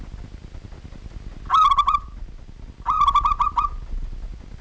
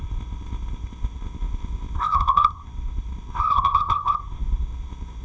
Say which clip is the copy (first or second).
second